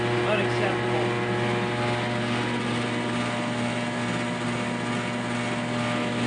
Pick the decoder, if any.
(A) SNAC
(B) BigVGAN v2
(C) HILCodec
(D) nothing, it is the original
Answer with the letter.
D